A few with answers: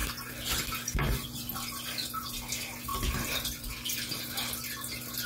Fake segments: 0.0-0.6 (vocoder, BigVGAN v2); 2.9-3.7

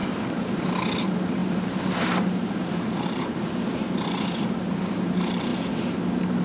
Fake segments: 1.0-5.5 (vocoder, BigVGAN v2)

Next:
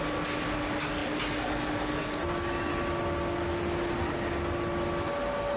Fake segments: none

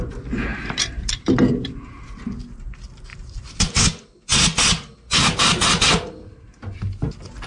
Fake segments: 0.5-1.7 (vocoder, BigVGAN v2); 3.1-3.8

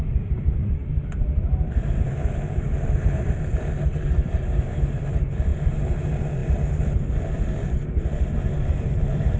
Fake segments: 0.0-0.8 (vocoder, BigVGAN v2); 1.4-9.4

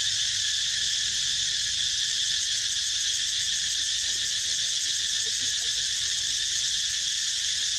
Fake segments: none

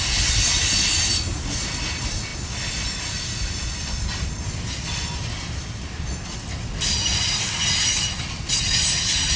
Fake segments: none